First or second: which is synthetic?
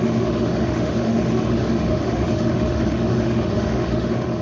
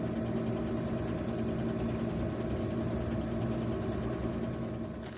first